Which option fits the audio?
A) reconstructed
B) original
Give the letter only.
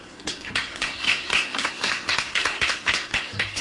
A